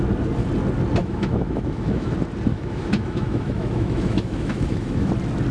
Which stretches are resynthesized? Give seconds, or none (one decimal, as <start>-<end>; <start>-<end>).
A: 1.0-2.1; 2.5-5.1